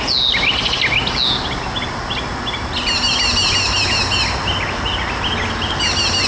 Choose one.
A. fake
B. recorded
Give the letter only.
B